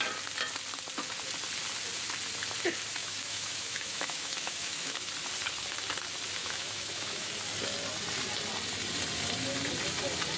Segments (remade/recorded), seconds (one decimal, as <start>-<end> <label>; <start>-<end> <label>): 0.0-3.0 recorded; 3.0-5.1 remade; 5.1-6.4 recorded; 6.4-7.3 remade; 7.3-10.4 recorded